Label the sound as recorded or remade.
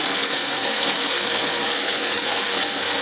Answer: remade